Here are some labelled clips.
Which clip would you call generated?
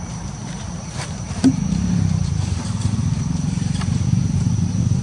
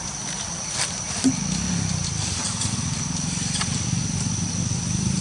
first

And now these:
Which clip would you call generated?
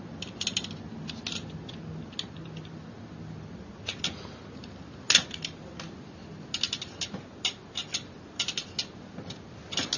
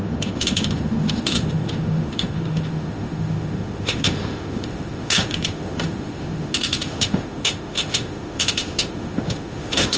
second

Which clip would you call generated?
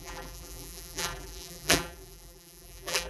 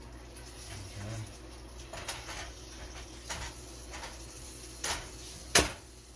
first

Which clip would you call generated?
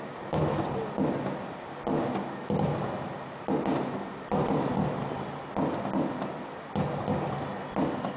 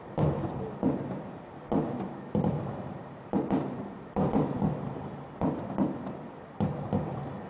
second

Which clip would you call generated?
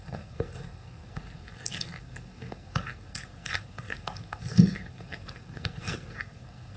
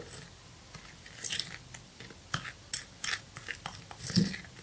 first